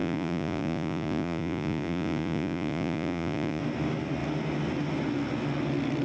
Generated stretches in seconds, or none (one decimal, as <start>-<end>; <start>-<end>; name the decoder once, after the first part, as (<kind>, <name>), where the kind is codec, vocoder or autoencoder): 0.0-3.6 (vocoder, Vocos)